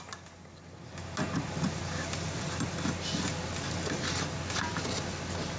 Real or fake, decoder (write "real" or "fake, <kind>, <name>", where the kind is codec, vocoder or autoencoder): real